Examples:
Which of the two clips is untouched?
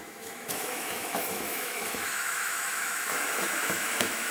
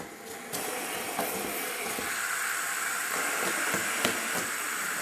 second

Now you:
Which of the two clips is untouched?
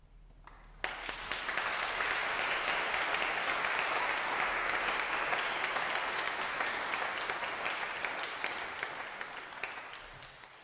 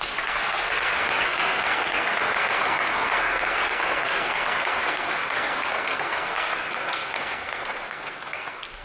first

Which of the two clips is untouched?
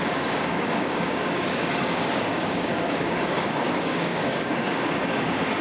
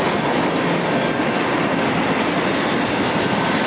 second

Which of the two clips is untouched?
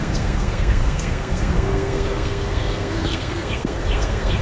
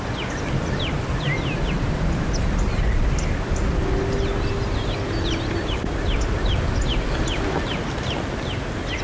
second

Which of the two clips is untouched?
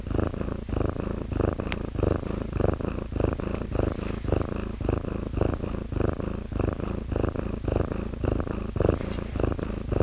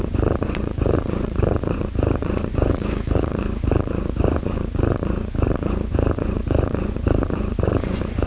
first